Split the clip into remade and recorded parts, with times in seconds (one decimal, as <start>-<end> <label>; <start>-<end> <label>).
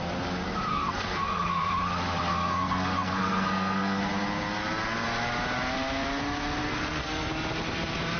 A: 0.0-0.7 recorded; 0.7-1.7 remade; 1.7-2.3 recorded; 2.3-4.1 remade; 4.1-6.6 recorded; 6.6-7.3 remade; 7.3-8.2 recorded